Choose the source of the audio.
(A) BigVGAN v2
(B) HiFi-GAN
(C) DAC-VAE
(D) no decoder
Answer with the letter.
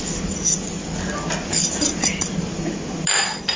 D